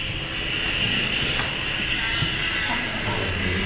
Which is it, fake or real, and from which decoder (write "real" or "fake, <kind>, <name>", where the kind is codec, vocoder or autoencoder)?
real